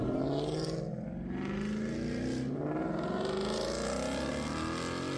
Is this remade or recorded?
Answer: recorded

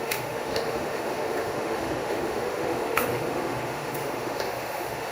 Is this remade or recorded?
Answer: remade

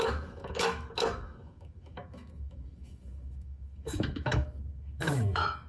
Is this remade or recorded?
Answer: remade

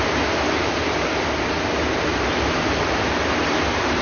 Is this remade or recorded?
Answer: recorded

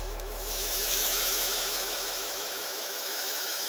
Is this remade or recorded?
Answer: remade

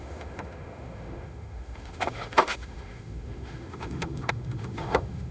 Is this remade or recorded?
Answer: remade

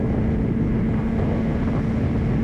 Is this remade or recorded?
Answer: recorded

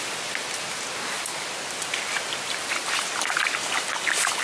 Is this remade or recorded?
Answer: recorded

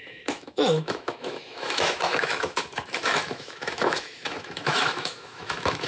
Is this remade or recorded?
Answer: remade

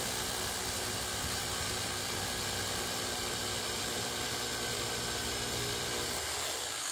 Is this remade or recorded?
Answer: recorded